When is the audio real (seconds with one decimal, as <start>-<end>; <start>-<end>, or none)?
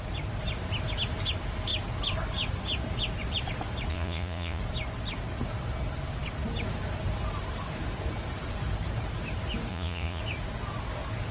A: 0.0-3.9; 4.6-9.7; 10.2-11.3